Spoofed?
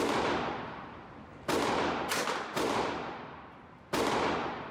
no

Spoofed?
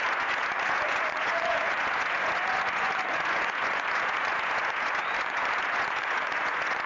yes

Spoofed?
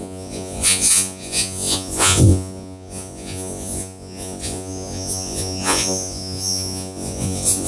yes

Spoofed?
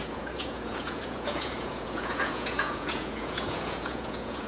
yes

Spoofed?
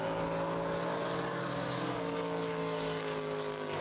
yes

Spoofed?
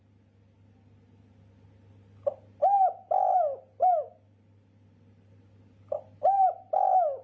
no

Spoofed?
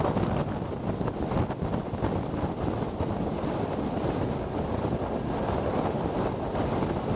no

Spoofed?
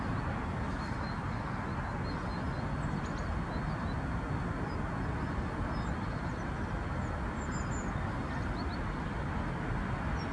no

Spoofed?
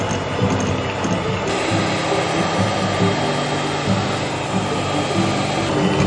no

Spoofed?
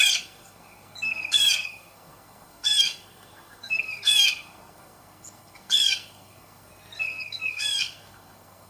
yes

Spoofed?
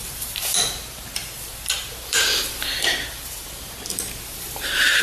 yes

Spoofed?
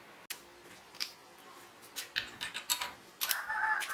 no